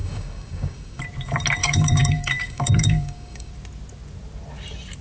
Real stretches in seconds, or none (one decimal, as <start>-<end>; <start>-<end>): 1.0-1.6; 3.5-5.0